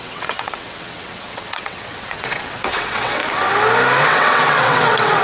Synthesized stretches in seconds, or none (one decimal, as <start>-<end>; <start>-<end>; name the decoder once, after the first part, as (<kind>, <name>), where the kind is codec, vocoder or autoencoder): 0.0-3.2 (vocoder, WaveNeXt); 4.0-5.2